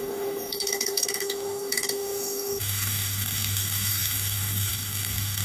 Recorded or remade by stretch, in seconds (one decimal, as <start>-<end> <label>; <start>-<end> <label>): 0.0-5.4 remade